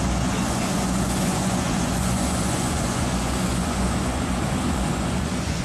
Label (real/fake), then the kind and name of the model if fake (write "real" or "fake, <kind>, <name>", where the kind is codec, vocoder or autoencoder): fake, vocoder, Vocos